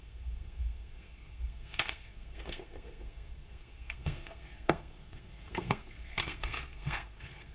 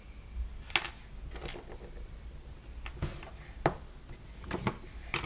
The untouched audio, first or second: second